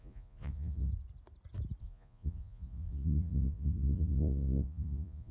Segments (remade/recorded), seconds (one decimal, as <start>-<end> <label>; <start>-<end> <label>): 0.0-0.9 remade; 0.9-1.8 recorded; 1.8-5.3 remade